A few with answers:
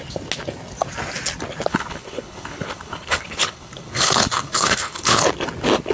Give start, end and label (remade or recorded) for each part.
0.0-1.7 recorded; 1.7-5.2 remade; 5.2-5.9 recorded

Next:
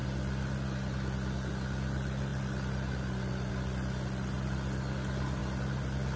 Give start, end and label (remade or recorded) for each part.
0.0-6.2 recorded

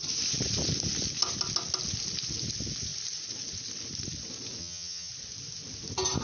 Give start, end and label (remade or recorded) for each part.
0.0-4.6 recorded; 4.6-5.1 remade; 5.1-6.2 recorded

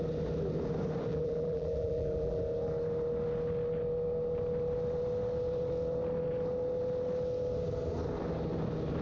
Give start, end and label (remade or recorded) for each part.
0.0-1.1 recorded; 1.1-2.4 remade; 2.4-9.0 recorded

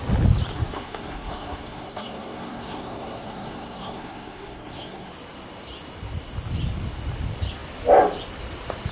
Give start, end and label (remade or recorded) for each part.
0.0-0.5 recorded; 0.5-5.1 remade; 5.1-8.9 recorded

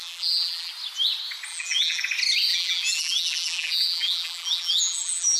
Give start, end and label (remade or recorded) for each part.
0.0-0.7 remade; 0.7-1.5 recorded; 1.5-2.0 remade; 2.0-2.5 recorded; 2.5-5.4 remade